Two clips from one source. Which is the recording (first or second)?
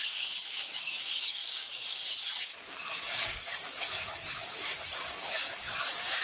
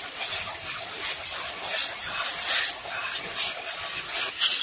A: second